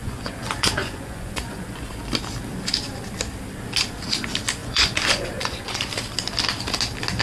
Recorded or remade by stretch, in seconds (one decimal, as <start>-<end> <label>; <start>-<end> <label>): 0.0-2.0 remade; 2.0-4.6 recorded; 4.6-5.9 remade; 5.9-7.2 recorded